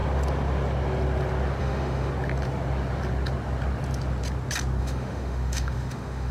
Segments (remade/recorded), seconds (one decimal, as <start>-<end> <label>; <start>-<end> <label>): 0.0-1.6 recorded; 1.6-2.1 remade; 2.1-4.8 recorded; 4.8-6.3 remade

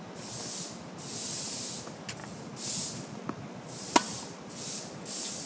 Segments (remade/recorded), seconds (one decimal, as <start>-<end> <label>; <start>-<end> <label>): 0.0-5.5 recorded

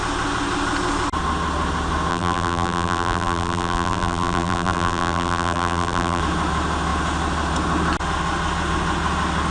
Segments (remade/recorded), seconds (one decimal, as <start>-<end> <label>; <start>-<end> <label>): 0.0-2.1 recorded; 2.1-6.2 remade; 6.2-9.5 recorded

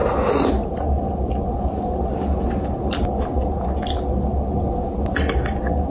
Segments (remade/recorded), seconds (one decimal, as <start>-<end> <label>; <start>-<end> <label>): 0.0-5.9 recorded

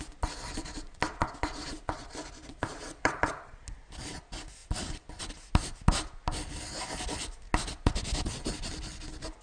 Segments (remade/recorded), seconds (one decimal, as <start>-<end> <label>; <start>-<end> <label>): 0.0-0.5 recorded; 0.5-2.1 remade; 2.1-2.5 recorded; 2.5-3.6 remade; 3.6-9.4 recorded

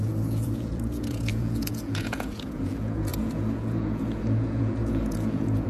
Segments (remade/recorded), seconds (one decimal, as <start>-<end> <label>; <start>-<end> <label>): 0.0-5.7 remade

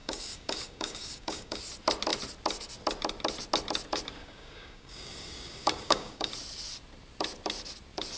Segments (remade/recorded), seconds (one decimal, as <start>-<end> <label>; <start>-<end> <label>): 0.0-1.6 remade; 1.6-4.2 recorded; 4.2-6.3 remade; 6.3-8.2 recorded

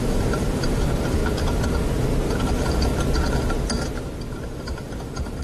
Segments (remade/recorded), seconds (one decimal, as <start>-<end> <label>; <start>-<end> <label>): 0.0-1.2 remade; 1.2-2.4 recorded; 2.4-2.9 remade; 2.9-4.3 recorded; 4.3-5.4 remade